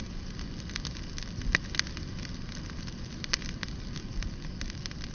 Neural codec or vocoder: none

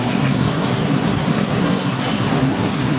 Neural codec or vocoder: codec, SNAC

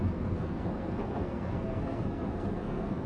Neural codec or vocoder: codec, SNAC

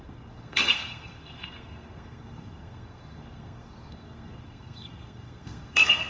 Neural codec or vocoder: codec, SNAC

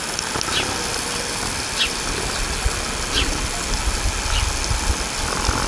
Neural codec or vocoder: none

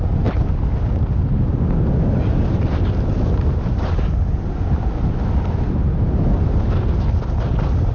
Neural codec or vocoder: none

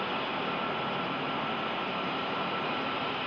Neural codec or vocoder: none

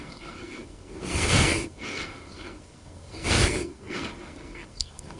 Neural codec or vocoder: codec, SNAC